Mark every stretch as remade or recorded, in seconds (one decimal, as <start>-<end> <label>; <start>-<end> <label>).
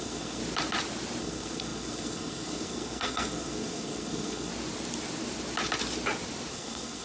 0.0-0.4 remade; 0.4-1.2 recorded; 1.2-4.5 remade; 4.5-6.5 recorded; 6.5-7.0 remade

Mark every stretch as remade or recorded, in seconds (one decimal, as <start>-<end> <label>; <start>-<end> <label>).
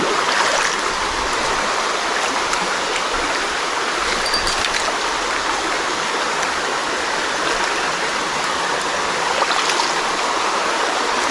0.0-11.3 recorded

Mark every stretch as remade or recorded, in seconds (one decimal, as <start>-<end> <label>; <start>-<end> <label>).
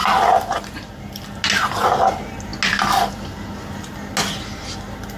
0.0-5.2 recorded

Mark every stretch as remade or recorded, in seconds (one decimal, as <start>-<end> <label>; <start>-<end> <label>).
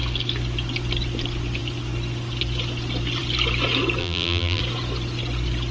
0.0-4.0 recorded; 4.0-4.6 remade; 4.6-5.7 recorded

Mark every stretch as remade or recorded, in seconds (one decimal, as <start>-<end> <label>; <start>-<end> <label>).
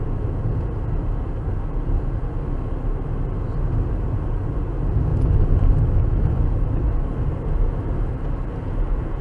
0.0-5.1 recorded; 5.1-7.1 remade; 7.1-9.2 recorded